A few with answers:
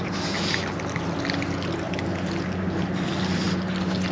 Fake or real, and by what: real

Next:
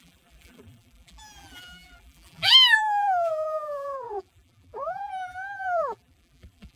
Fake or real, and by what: fake, vocoder, BigVGAN v2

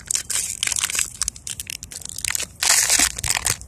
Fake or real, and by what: real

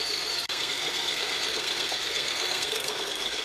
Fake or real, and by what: fake, codec, SNAC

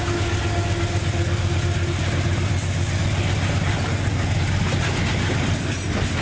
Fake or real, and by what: real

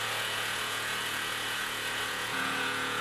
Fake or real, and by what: fake, vocoder, Vocos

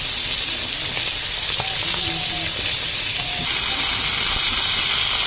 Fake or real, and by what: real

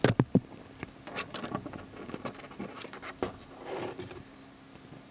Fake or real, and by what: real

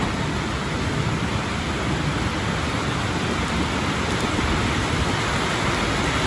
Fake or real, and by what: real